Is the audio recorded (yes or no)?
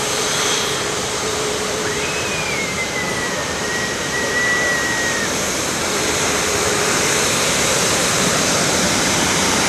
no